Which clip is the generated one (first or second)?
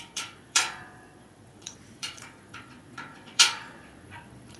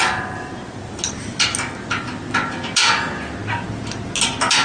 first